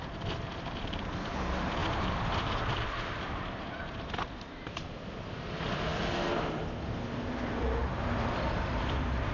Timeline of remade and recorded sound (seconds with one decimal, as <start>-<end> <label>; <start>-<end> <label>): 0.0-1.8 remade; 1.8-2.7 recorded; 2.7-5.9 remade; 5.9-6.6 recorded; 6.6-9.3 remade

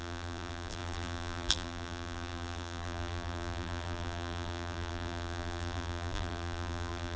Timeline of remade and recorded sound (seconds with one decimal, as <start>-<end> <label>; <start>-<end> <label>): 0.0-7.2 remade

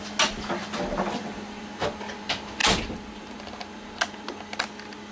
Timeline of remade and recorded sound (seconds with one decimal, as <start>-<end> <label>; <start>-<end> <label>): 0.0-5.1 recorded